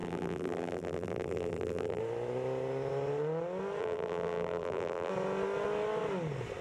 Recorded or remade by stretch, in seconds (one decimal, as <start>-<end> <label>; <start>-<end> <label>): 0.0-2.0 remade; 2.0-3.8 recorded; 3.8-5.1 remade; 5.1-6.6 recorded